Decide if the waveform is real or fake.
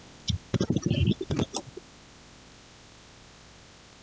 real